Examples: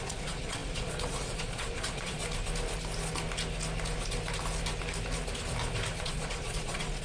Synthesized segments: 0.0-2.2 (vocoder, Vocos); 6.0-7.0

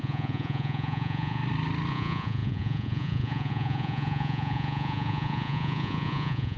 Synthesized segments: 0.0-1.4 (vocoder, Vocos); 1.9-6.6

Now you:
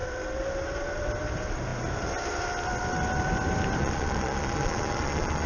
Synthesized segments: 3.8-5.5 (vocoder, Vocos)